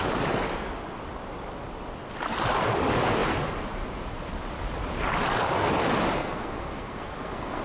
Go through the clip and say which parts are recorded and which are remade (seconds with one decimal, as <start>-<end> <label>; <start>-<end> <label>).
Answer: 0.0-6.2 recorded; 6.2-7.6 remade